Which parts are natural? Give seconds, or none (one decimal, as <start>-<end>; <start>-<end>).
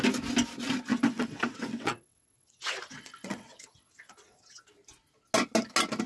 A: 0.0-0.9; 4.6-6.1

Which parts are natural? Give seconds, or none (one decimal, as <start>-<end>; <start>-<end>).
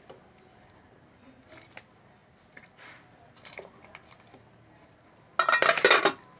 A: 0.0-6.4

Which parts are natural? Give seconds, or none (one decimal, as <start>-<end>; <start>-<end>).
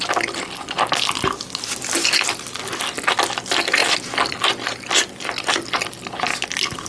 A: 0.0-6.9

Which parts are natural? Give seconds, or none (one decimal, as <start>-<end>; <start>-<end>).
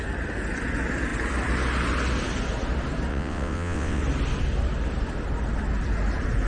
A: 0.0-3.1; 4.0-6.5